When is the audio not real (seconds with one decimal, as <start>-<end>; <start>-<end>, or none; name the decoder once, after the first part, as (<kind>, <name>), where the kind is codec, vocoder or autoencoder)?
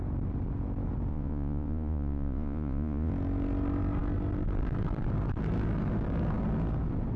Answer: 1.1-3.1 (vocoder, Vocos)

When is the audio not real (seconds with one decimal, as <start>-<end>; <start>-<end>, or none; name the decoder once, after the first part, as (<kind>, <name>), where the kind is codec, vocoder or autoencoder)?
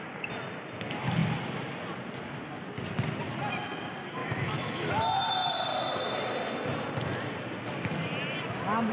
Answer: 4.2-4.9 (autoencoder, DAC-VAE)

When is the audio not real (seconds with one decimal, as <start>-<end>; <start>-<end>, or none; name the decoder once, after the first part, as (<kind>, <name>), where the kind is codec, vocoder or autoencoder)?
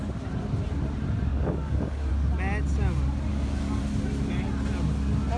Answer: 1.3-2.1 (codec, DAC); 3.3-3.8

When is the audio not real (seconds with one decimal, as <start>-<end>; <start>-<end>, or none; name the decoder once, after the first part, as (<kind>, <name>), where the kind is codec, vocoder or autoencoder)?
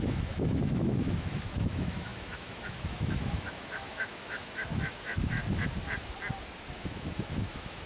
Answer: 0.0-5.4 (autoencoder, DAC-VAE); 6.7-7.9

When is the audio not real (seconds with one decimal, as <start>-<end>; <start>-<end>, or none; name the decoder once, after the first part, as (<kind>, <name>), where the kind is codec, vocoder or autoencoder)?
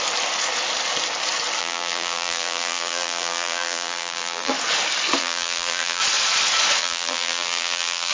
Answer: 1.6-4.5 (vocoder, BigVGAN v2); 5.2-6.0; 6.8-8.1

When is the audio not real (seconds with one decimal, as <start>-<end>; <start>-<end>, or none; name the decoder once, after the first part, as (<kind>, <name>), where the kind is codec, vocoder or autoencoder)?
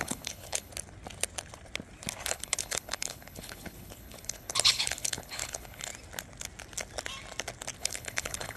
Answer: 0.0-0.7 (codec, HILCodec); 2.3-5.9; 7.8-8.6